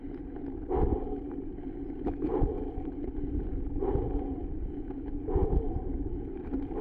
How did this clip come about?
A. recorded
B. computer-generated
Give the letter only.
A